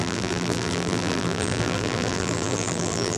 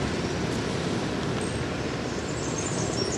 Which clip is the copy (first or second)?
first